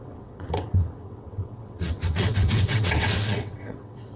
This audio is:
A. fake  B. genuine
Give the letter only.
A